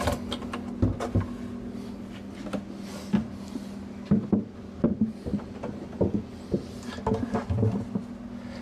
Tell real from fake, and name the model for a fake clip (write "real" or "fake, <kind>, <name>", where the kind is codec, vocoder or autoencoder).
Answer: real